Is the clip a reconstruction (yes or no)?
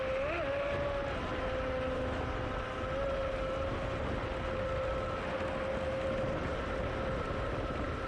no